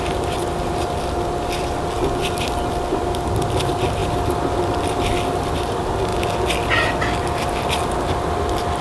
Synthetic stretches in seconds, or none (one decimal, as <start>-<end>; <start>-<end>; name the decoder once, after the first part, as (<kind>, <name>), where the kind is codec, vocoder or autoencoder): none